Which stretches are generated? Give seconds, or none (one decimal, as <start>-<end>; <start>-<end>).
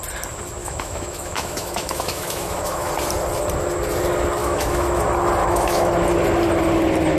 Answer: 0.6-2.9; 4.4-5.0; 5.4-5.9